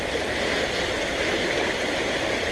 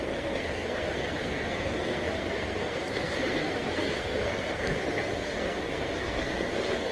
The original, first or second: first